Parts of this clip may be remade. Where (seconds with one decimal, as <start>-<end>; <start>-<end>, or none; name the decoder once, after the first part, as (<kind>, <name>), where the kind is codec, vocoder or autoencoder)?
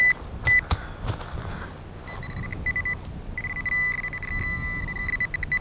none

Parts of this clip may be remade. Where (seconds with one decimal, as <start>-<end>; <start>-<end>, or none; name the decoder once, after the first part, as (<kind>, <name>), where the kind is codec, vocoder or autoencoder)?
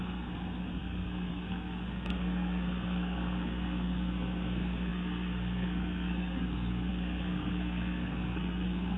0.0-9.0 (codec, SNAC)